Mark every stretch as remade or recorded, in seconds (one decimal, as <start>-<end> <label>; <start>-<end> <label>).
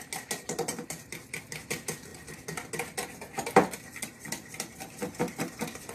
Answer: 0.0-5.9 recorded